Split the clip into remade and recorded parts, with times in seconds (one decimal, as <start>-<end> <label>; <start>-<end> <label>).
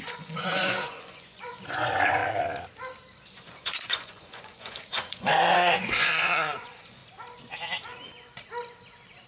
0.0-2.2 remade; 2.2-3.2 recorded; 3.2-7.0 remade; 7.0-9.3 recorded